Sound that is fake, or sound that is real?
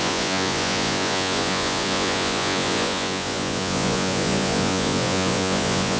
fake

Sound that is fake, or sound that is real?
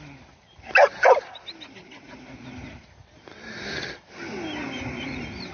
real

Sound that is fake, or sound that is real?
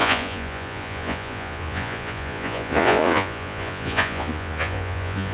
fake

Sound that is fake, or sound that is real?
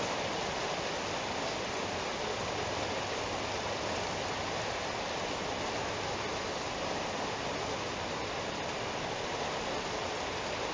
real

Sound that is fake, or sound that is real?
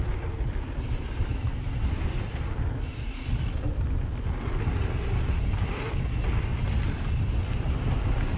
real